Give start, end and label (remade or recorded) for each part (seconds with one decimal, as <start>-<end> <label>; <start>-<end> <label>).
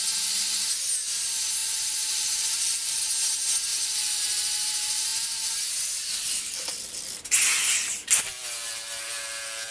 0.0-1.6 recorded; 1.6-3.0 remade; 3.0-3.7 recorded; 3.7-4.2 remade; 4.2-9.7 recorded